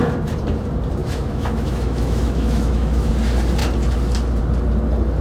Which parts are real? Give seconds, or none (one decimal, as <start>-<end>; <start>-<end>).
0.0-1.0; 3.1-5.2